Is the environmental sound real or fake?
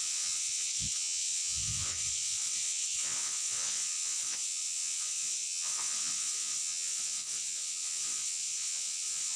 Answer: fake